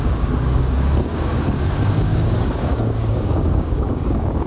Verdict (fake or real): fake